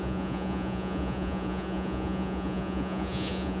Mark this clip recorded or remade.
remade